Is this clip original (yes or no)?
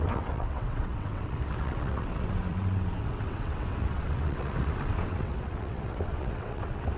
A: no